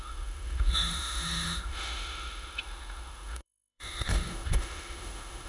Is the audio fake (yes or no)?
yes